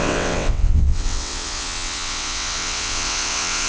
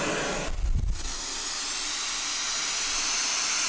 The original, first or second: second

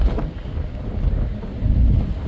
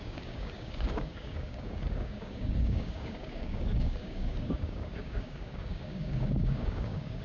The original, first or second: first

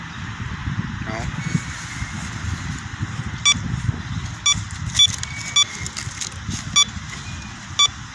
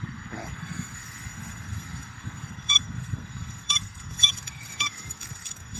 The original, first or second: first